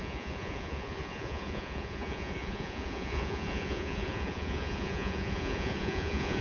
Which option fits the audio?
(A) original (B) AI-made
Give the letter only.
B